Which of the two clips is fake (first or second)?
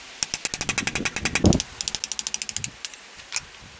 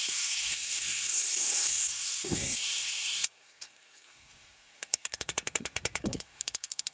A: second